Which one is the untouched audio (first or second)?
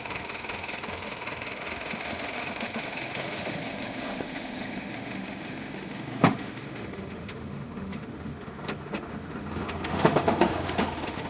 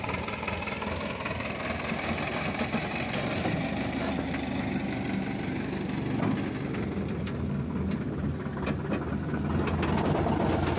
second